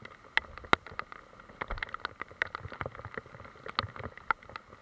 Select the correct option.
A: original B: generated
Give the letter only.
A